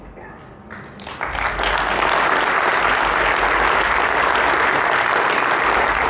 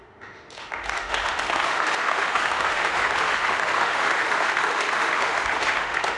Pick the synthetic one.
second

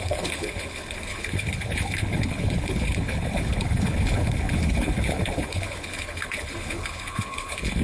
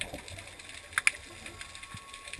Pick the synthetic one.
first